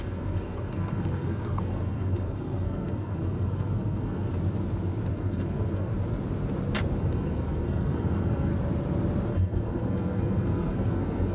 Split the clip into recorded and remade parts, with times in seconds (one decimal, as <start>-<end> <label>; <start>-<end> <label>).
0.0-4.3 remade; 4.3-5.1 recorded; 5.1-5.9 remade; 5.9-7.0 recorded; 7.0-8.5 remade; 8.5-9.3 recorded; 9.3-11.3 remade